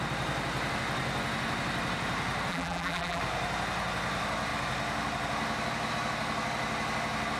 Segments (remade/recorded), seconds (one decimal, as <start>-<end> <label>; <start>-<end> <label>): 0.0-2.5 recorded; 2.5-3.2 remade; 3.2-7.4 recorded